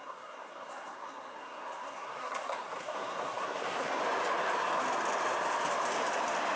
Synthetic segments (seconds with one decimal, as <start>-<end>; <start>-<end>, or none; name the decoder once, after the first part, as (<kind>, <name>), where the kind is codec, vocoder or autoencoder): 0.0-4.0 (codec, SNAC)